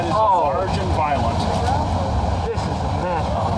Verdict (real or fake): real